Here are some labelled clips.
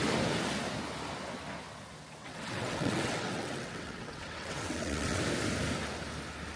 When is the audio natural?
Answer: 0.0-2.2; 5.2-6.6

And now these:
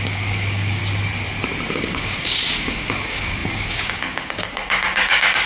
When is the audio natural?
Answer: 0.8-1.7

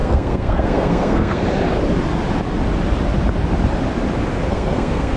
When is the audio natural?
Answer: 1.4-4.5

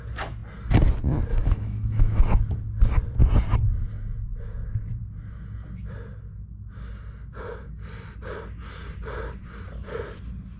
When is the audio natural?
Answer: 0.0-1.3; 2.2-10.6

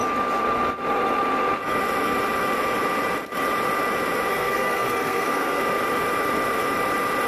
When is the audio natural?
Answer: 0.0-4.3; 5.6-7.3

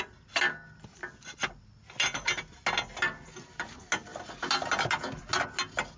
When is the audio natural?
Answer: 0.0-6.0